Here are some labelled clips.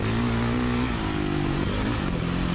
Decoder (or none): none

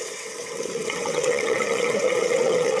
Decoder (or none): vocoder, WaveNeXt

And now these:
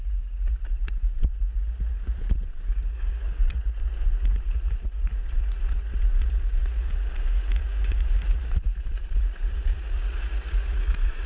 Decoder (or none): vocoder, Vocos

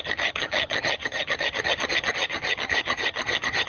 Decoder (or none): vocoder, HiFi-GAN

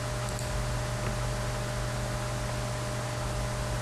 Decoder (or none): none